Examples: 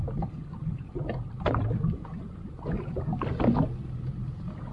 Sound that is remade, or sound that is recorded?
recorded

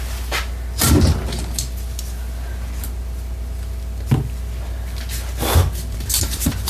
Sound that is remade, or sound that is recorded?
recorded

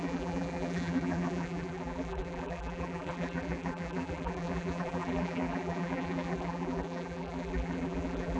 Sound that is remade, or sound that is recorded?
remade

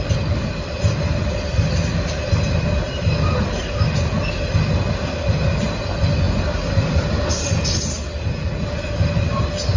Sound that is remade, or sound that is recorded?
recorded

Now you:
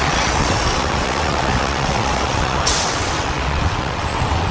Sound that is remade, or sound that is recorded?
remade